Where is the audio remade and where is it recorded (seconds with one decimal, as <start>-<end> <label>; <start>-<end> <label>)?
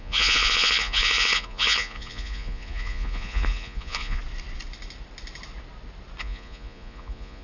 0.0-4.2 remade; 4.2-6.2 recorded; 6.2-7.4 remade